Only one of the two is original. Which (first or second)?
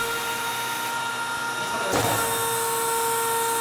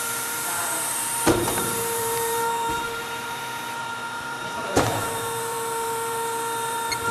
first